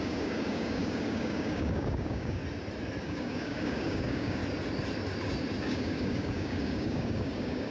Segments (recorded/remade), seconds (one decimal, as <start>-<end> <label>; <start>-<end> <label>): 0.0-2.4 remade; 2.4-3.0 recorded; 3.0-4.4 remade; 4.4-5.6 recorded; 5.6-7.7 remade